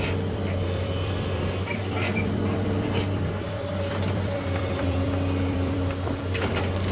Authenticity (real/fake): fake